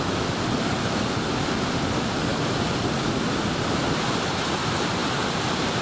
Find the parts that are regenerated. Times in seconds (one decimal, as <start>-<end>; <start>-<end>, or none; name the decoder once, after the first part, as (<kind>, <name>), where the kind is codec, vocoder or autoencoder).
5.0-5.8 (vocoder, BigVGAN v2)